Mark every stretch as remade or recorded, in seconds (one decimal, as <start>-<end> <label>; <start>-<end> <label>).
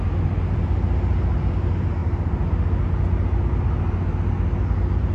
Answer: 0.0-5.1 recorded